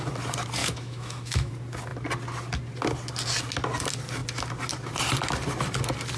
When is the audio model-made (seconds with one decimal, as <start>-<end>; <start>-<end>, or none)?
0.6-1.5